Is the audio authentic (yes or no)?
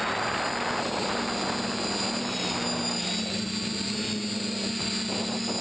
yes